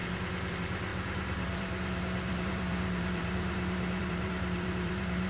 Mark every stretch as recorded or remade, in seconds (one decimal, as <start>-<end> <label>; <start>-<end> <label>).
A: 0.0-5.3 remade